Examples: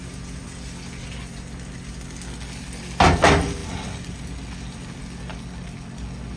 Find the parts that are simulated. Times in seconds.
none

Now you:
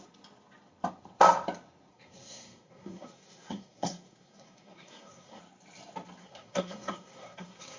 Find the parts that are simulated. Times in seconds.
1.9-5.4; 6.2-7.8

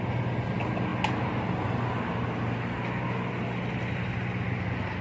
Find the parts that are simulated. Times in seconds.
none